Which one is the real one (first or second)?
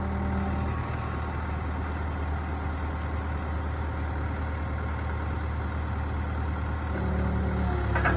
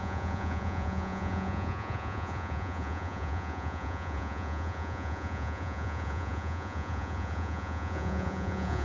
first